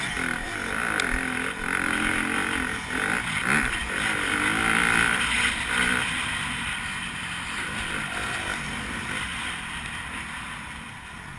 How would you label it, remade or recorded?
recorded